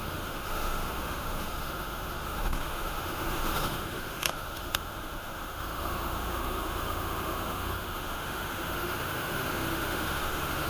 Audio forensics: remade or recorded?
remade